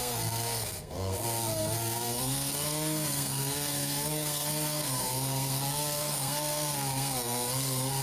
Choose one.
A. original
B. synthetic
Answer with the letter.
B